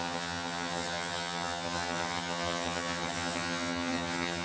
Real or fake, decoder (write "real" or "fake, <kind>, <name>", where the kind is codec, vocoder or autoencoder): fake, vocoder, HiFi-GAN